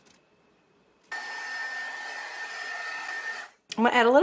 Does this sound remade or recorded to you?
recorded